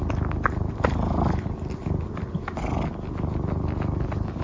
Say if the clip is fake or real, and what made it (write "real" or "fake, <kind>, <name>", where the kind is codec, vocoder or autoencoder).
real